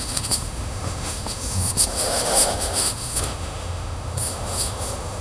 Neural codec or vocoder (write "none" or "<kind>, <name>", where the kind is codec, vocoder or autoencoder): autoencoder, DAC-VAE